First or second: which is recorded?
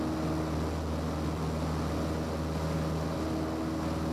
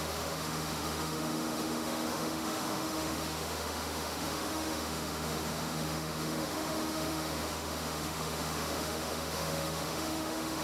first